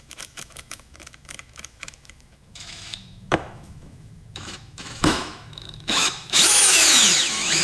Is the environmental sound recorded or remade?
remade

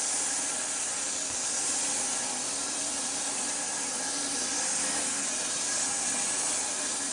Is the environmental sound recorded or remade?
recorded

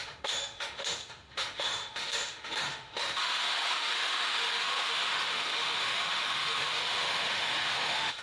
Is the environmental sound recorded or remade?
remade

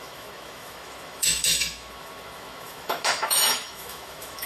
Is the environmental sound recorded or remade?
remade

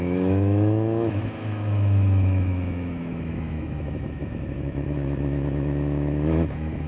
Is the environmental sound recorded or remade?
remade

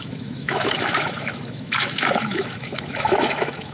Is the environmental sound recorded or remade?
remade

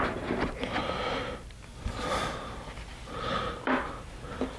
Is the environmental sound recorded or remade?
recorded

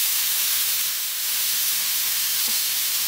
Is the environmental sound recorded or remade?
remade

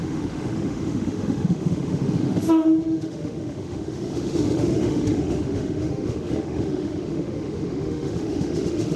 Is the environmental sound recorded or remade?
remade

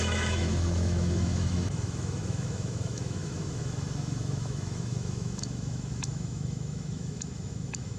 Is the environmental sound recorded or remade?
remade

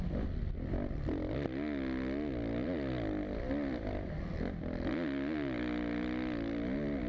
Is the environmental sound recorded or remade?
recorded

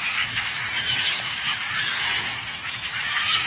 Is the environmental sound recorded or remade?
remade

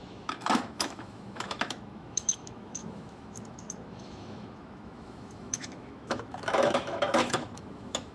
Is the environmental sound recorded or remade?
remade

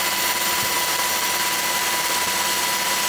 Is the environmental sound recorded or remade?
recorded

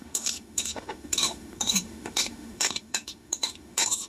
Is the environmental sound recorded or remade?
remade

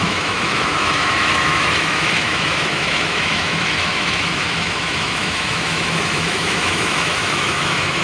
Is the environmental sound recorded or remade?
remade